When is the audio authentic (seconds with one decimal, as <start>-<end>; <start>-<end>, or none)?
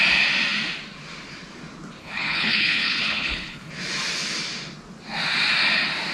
0.0-2.0; 3.7-6.1